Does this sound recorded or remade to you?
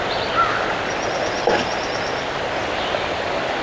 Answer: recorded